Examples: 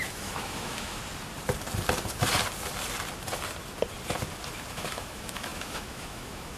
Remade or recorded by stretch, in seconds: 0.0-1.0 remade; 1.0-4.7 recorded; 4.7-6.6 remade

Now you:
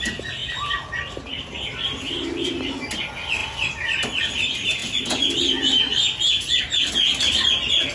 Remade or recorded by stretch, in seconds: 0.0-7.9 recorded

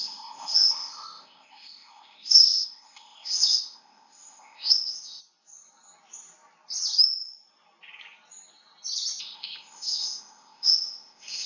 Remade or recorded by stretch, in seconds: 0.0-5.2 remade; 5.2-9.2 recorded; 9.2-11.5 remade